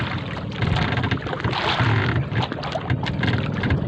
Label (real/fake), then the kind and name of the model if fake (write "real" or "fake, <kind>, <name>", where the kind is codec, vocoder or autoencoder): real